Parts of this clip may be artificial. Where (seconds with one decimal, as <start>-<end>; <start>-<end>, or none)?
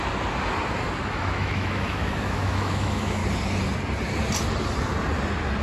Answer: 1.0-3.2